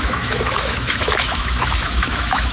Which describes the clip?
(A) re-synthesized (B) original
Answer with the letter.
A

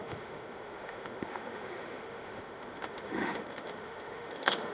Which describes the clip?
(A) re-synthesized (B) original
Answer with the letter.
A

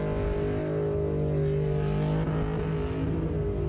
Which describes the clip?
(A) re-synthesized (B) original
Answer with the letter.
B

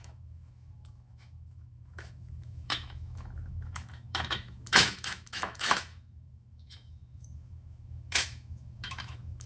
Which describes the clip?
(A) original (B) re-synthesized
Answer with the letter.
B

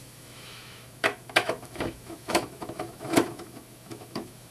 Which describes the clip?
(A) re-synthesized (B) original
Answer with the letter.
A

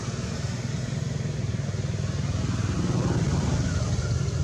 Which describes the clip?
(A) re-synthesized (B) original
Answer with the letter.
B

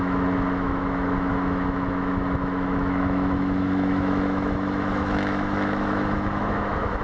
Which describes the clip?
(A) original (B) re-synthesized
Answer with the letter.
B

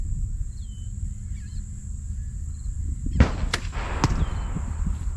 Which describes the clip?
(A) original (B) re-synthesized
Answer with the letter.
A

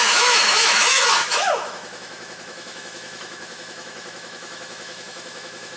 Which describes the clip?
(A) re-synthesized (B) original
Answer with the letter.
A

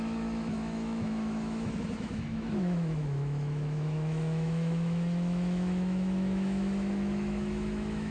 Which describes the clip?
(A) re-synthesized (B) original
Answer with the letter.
A